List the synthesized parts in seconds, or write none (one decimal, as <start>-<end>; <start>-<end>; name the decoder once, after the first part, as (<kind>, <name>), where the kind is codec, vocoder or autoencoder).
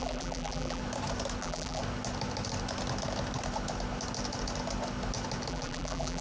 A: 0.0-0.8 (vocoder, BigVGAN v2); 1.4-1.8; 5.5-6.2